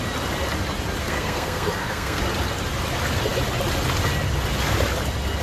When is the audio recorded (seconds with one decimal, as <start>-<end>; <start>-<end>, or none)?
0.0-1.0; 2.2-5.4